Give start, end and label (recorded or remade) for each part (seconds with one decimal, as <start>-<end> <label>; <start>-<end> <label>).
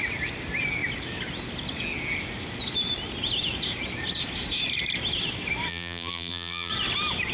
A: 0.0-5.7 recorded; 5.7-6.7 remade; 6.7-7.3 recorded